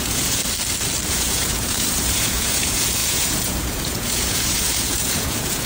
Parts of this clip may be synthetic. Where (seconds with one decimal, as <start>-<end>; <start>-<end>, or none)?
0.0-0.4; 1.1-5.7